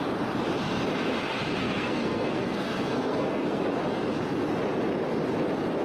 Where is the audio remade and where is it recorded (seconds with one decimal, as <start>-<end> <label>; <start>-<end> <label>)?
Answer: 0.0-1.6 recorded; 1.6-3.6 remade; 3.6-5.8 recorded